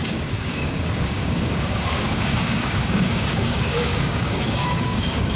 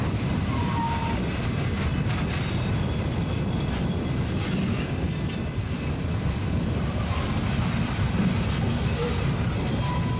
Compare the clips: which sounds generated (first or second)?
first